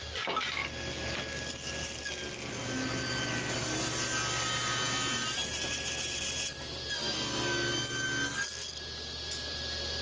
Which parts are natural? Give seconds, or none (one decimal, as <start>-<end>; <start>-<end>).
0.0-10.0